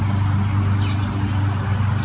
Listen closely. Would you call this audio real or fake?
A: real